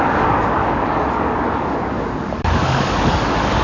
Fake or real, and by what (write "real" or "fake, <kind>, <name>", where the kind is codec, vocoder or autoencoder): fake, codec, DAC